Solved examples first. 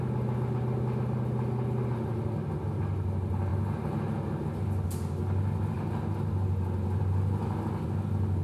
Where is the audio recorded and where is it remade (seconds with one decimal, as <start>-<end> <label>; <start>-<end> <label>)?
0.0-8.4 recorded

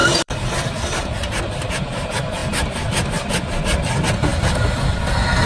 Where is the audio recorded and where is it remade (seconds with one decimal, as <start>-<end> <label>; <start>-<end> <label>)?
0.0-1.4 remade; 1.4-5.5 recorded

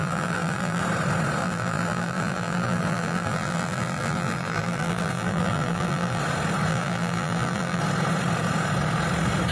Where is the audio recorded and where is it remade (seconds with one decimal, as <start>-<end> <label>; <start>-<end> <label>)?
0.0-0.8 remade; 0.8-1.4 recorded; 1.4-6.2 remade; 6.2-6.7 recorded; 6.7-7.8 remade; 7.8-9.5 recorded

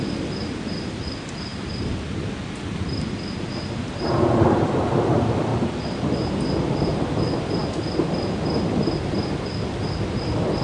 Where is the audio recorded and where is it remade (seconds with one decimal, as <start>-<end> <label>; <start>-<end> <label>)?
0.0-5.5 recorded; 5.5-6.4 remade; 6.4-10.6 recorded